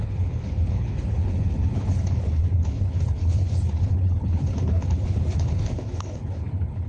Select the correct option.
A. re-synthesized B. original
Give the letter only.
A